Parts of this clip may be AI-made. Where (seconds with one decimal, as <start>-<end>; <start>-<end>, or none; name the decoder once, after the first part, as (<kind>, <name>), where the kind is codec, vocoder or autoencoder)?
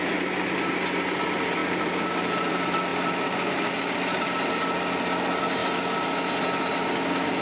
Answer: none